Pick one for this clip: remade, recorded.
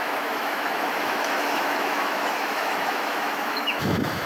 remade